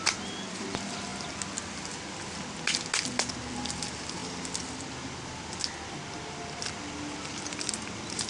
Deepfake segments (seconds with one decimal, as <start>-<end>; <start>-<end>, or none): none